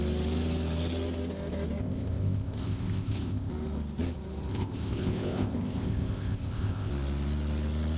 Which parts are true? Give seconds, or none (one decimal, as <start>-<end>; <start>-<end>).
0.0-1.8; 3.5-4.5; 6.9-8.0